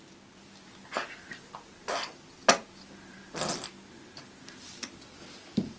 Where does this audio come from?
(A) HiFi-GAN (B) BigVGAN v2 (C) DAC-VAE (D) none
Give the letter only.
D